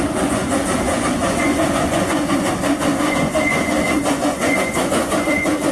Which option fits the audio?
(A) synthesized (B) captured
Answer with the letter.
A